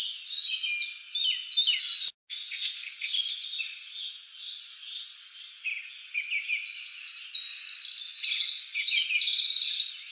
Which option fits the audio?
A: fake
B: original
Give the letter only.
B